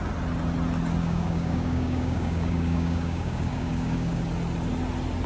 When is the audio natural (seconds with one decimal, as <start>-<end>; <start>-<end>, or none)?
0.0-1.0; 4.2-5.3